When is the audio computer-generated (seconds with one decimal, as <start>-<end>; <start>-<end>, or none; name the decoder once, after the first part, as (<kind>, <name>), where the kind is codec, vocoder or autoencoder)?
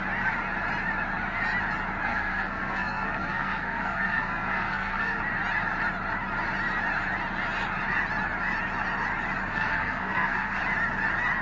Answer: 2.1-5.2 (codec, SNAC); 9.5-10.6